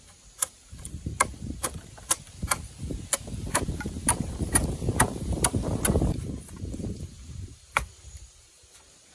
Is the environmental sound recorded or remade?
remade